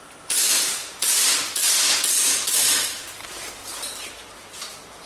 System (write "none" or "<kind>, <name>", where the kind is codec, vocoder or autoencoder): none